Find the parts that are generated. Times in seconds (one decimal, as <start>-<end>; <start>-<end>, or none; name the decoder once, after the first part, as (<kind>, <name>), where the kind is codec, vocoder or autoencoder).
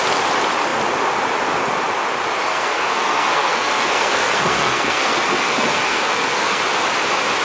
2.5-6.6 (codec, SNAC)